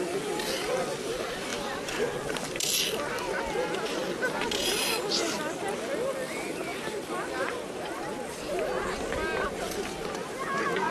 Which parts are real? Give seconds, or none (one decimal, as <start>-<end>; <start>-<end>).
0.0-10.9